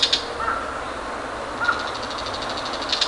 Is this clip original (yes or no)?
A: yes